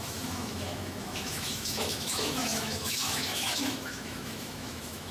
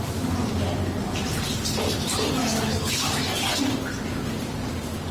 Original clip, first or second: second